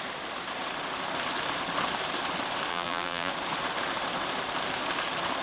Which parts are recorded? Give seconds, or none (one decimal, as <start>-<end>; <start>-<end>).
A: 0.0-2.7; 3.3-5.4